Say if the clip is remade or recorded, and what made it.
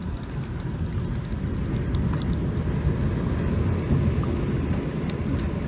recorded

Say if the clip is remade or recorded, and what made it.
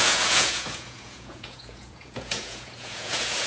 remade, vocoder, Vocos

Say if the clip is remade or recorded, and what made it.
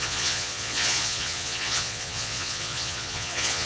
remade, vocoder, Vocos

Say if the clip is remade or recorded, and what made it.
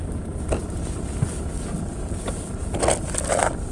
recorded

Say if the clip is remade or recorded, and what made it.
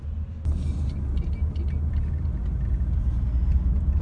recorded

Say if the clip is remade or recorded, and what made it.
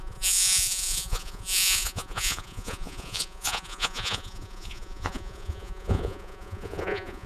remade, vocoder, Vocos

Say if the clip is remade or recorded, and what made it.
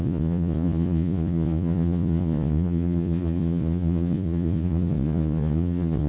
remade, vocoder, Vocos